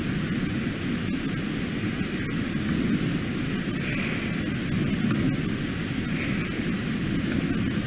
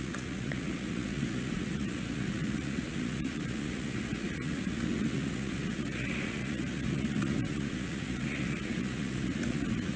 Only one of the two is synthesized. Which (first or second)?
second